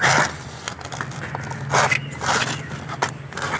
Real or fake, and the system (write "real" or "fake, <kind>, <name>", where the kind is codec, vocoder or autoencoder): real